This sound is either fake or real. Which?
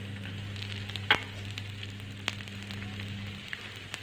real